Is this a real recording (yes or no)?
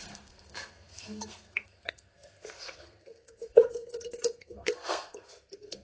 no